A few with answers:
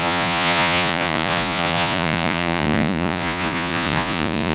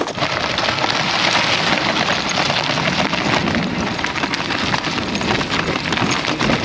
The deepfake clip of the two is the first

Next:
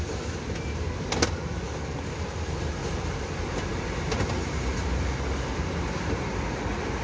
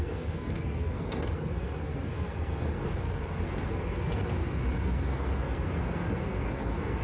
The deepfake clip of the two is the second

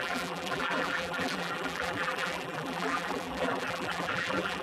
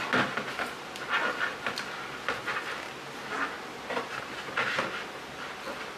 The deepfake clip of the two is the first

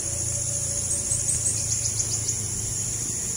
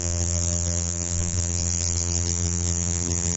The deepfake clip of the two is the second